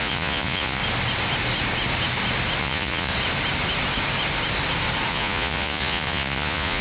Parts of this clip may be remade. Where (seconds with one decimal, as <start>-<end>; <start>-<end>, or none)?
0.0-0.8; 2.6-3.1; 5.1-6.8